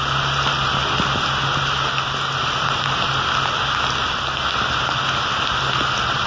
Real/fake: real